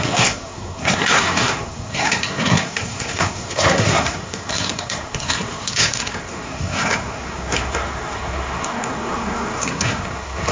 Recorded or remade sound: remade